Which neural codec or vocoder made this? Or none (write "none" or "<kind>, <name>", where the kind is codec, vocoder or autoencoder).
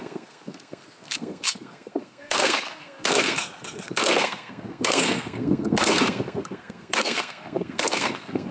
codec, SNAC